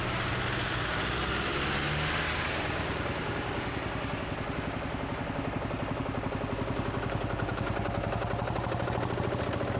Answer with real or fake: real